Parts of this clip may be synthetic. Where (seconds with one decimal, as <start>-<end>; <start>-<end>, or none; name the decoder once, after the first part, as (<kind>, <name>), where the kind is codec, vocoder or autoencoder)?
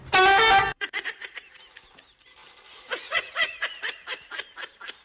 0.7-1.3 (vocoder, Vocos); 2.7-4.3